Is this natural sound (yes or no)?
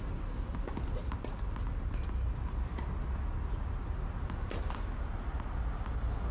yes